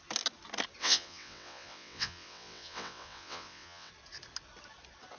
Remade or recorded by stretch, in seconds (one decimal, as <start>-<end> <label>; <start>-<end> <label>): 0.0-0.8 recorded; 0.8-3.9 remade; 3.9-5.2 recorded